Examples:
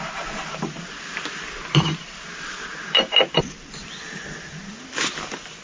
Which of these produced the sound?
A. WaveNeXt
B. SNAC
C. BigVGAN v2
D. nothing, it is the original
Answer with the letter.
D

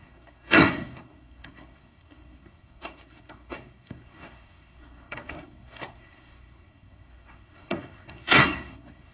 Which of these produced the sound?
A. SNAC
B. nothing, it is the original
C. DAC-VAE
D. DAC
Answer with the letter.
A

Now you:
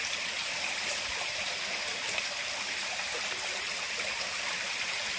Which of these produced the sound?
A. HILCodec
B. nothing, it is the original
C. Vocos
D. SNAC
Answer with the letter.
B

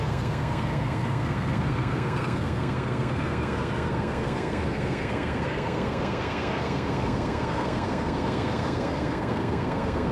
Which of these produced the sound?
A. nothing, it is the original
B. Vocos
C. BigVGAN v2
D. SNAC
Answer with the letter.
D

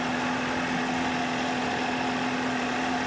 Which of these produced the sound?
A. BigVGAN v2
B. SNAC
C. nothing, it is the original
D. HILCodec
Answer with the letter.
C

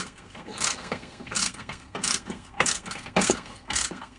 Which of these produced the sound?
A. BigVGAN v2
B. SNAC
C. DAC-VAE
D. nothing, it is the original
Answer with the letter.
B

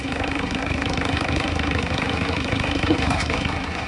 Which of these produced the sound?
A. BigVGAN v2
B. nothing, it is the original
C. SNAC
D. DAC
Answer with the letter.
C